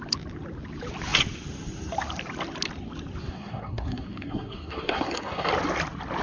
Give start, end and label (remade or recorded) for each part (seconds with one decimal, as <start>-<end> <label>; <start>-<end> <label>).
0.0-3.2 recorded; 3.2-5.5 remade; 5.5-6.2 recorded